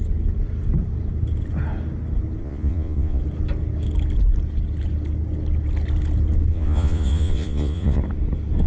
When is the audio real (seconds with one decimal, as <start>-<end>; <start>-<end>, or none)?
0.0-2.4; 3.2-6.5; 8.0-8.7